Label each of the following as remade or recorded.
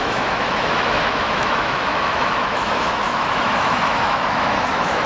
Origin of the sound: remade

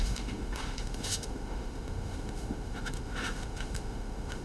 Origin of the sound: remade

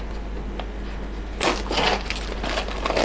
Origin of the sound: recorded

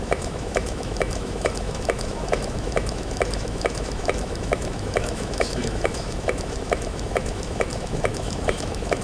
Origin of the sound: remade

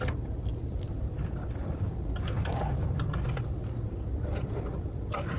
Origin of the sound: recorded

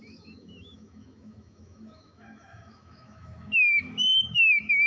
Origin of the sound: remade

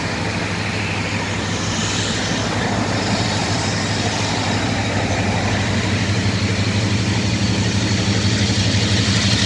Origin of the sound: recorded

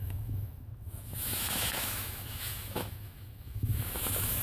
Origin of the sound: remade